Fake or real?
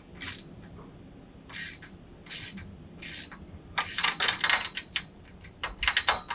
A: real